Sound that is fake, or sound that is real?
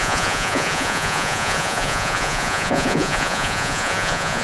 fake